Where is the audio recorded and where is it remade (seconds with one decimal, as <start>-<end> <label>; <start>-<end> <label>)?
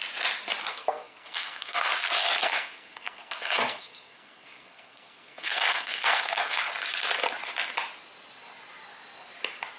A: 0.0-0.7 recorded; 0.7-1.9 remade; 1.9-2.4 recorded; 2.4-6.6 remade; 6.6-9.8 recorded